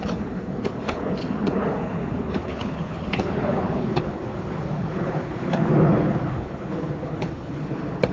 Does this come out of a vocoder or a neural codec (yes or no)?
yes